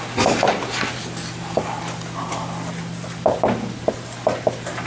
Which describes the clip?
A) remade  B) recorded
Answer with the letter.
B